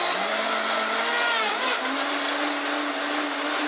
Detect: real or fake real